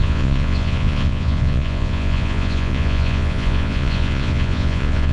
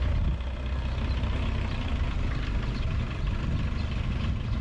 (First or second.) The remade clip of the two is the first